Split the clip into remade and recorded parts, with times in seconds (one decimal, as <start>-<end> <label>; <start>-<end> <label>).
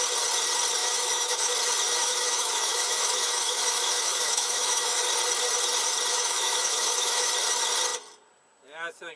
0.0-0.8 recorded; 0.8-1.5 remade; 1.5-2.0 recorded; 2.0-5.0 remade; 5.0-6.1 recorded; 6.1-7.3 remade; 7.3-9.2 recorded